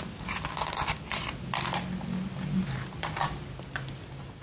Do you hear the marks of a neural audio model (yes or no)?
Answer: yes